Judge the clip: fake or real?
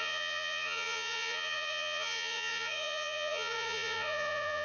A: fake